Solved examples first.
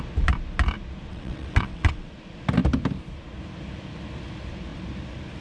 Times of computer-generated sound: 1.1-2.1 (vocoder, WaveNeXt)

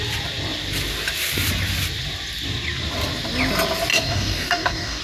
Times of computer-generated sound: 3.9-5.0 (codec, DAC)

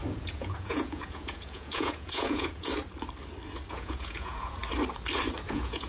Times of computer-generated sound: 0.0-2.7 (vocoder, Vocos); 3.7-4.6; 5.5-5.9